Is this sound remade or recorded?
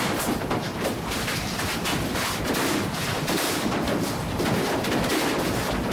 remade